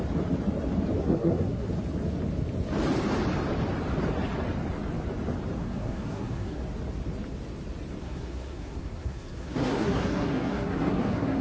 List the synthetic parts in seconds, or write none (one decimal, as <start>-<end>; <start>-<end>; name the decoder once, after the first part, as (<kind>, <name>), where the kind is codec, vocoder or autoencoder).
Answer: 1.0-1.7 (codec, SNAC); 5.6-6.6; 8.0-11.4